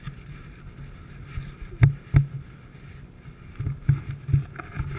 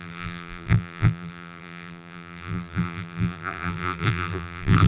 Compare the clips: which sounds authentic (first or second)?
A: first